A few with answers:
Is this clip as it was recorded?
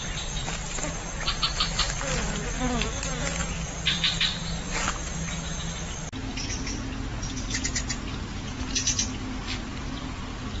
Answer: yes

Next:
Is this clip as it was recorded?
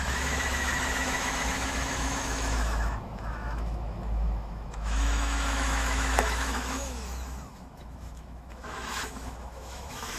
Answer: no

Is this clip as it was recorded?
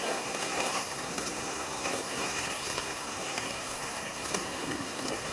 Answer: no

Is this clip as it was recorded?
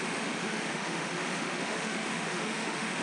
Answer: no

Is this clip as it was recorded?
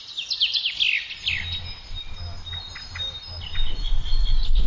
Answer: yes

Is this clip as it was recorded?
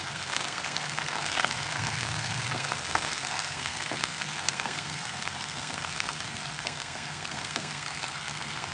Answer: no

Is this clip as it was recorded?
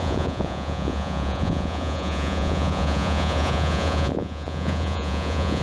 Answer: no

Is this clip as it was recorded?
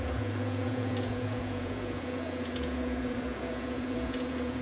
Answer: no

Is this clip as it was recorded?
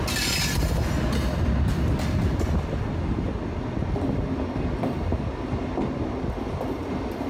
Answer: yes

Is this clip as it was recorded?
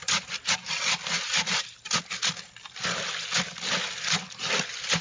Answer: yes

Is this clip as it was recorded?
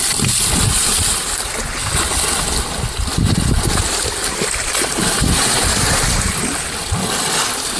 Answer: yes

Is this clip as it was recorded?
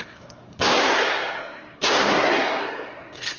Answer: no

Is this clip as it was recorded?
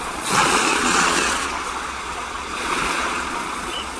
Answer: no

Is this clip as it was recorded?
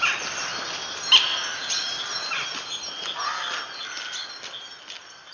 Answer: yes